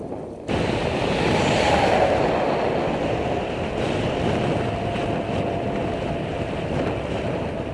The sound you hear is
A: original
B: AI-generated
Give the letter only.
A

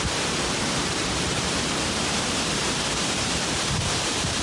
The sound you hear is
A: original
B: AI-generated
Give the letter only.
B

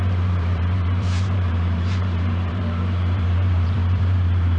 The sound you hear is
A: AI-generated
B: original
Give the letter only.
A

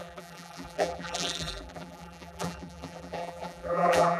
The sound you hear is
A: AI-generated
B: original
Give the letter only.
A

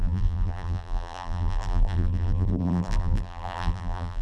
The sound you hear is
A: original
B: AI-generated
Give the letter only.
B